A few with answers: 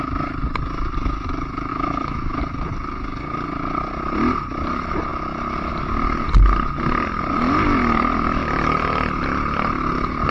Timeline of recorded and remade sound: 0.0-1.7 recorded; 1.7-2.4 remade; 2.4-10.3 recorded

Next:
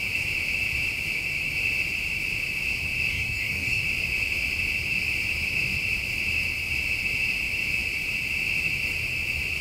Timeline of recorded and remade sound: 0.0-3.1 recorded; 3.1-3.8 remade; 3.8-9.6 recorded

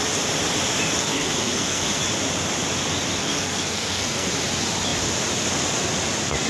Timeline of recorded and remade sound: 0.0-1.0 recorded; 1.0-2.0 remade; 2.0-3.2 recorded; 3.2-4.3 remade; 4.3-6.5 recorded

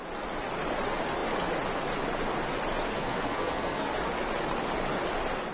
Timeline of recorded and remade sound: 0.0-2.9 recorded; 2.9-3.9 remade; 3.9-5.5 recorded

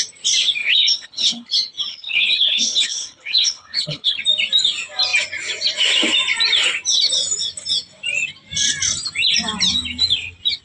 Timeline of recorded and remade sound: 0.0-0.6 recorded; 0.6-1.5 remade; 1.5-1.9 recorded; 1.9-4.2 remade; 4.2-10.6 recorded

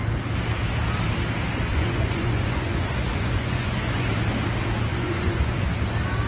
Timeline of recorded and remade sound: 0.0-1.7 recorded; 1.7-4.1 remade; 4.1-4.9 recorded; 4.9-5.7 remade; 5.7-6.3 recorded

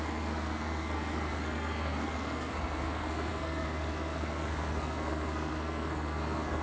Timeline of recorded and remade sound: 0.0-6.6 remade